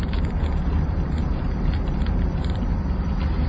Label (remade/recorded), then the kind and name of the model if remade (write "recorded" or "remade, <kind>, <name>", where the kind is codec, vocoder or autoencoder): remade, vocoder, BigVGAN v2